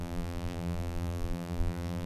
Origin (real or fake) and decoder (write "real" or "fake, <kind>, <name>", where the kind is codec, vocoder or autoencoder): fake, vocoder, BigVGAN v2